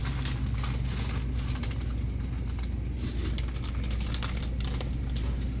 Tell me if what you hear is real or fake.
real